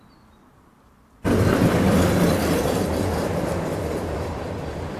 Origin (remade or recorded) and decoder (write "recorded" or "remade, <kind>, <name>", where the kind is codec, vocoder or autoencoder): remade, vocoder, BigVGAN v2